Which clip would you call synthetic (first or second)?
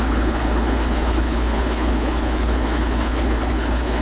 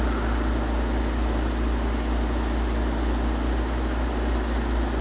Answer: first